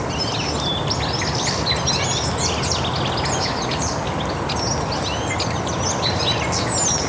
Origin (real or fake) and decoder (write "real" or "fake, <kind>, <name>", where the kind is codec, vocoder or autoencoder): real